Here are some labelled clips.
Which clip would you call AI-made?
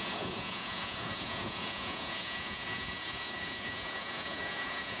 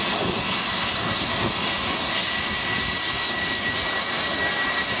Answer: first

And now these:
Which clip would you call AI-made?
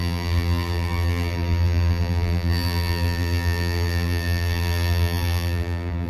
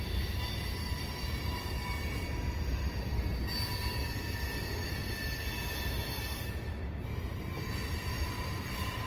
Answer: first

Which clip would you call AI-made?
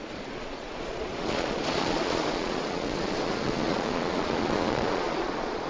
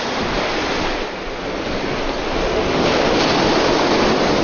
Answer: first